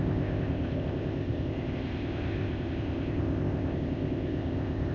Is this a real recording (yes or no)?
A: no